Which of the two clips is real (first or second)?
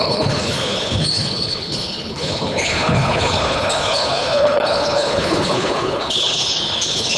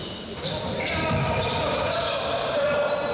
second